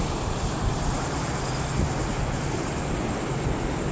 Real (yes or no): yes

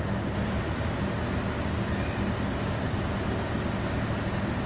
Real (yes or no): yes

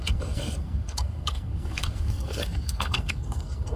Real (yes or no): no